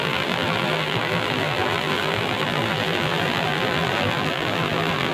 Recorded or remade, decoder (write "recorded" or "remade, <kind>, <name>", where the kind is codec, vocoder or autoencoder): remade, vocoder, BigVGAN v2